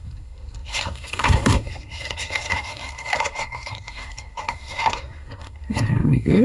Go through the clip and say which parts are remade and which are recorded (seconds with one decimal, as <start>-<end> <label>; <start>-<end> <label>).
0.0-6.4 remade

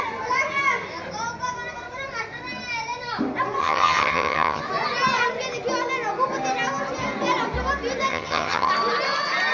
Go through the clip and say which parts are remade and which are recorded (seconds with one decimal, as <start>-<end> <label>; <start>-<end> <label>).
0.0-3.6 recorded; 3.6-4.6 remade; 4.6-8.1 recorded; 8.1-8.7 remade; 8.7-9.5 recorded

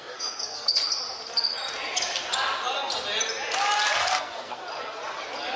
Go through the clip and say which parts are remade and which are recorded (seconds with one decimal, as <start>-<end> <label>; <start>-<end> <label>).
0.0-0.8 remade; 0.8-4.1 recorded; 4.1-4.6 remade; 4.6-5.6 recorded

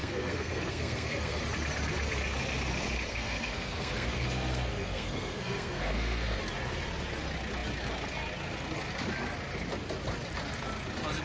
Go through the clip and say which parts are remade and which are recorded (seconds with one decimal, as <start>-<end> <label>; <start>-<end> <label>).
0.0-1.4 remade; 1.4-3.1 recorded; 3.1-6.4 remade; 6.4-11.2 recorded

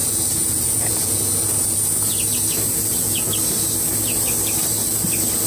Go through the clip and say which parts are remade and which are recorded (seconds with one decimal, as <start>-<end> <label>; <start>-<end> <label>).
0.0-1.2 remade; 1.2-2.7 recorded; 2.7-3.3 remade; 3.3-5.5 recorded

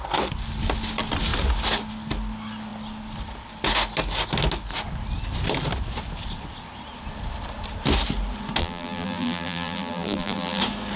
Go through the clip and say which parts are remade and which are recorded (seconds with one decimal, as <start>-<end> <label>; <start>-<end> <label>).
0.0-8.6 recorded; 8.6-10.6 remade; 10.6-11.0 recorded

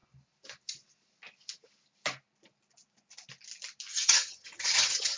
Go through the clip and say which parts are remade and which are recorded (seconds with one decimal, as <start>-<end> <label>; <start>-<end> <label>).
0.0-3.9 recorded; 3.9-5.2 remade

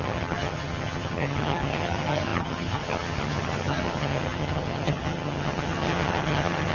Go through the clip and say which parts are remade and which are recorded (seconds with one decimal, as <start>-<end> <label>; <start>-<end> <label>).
0.0-6.7 remade